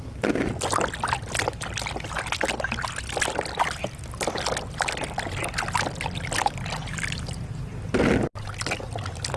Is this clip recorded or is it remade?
recorded